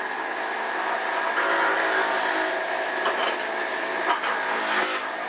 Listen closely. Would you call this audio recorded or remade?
recorded